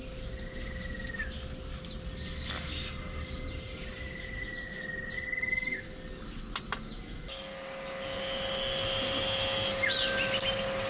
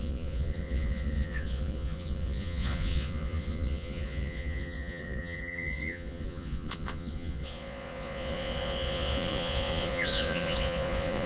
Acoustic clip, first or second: first